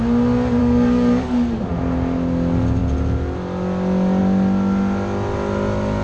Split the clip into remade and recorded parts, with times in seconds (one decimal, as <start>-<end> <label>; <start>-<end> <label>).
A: 0.0-0.6 recorded; 0.6-1.7 remade; 1.7-6.0 recorded